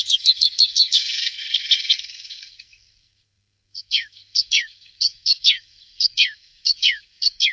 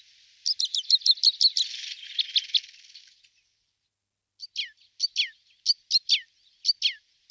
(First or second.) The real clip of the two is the second